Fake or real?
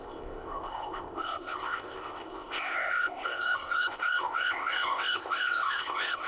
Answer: fake